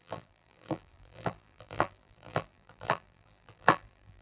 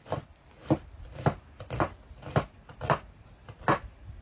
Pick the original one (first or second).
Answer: second